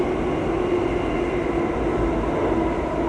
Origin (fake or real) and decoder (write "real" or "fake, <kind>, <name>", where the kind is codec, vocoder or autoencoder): real